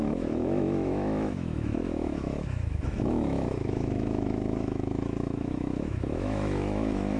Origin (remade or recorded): remade